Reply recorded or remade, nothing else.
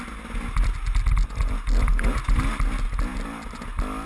recorded